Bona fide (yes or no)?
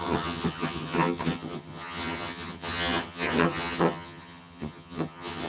no